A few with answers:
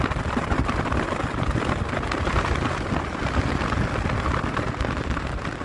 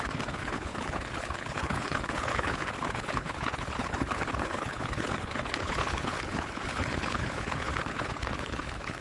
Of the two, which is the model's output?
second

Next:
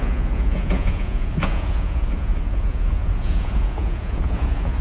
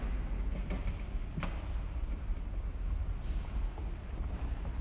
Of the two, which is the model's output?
first